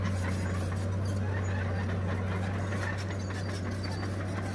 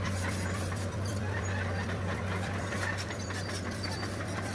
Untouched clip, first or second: first